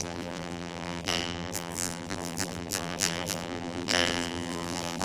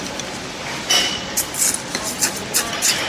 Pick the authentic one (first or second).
second